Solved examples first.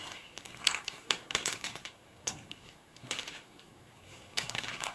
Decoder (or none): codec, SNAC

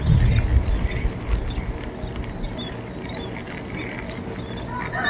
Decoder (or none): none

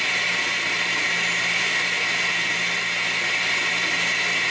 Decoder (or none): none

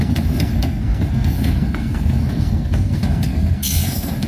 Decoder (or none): codec, SNAC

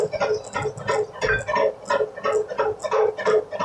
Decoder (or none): none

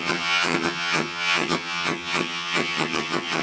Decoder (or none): vocoder, HiFi-GAN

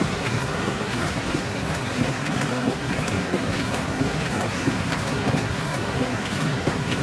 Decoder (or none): codec, SNAC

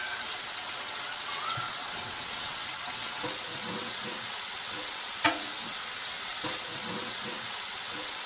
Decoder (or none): vocoder, WaveNeXt